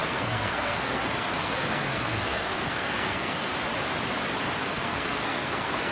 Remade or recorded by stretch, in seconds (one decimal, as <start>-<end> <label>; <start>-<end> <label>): 0.0-3.5 remade; 3.5-4.6 recorded; 4.6-5.9 remade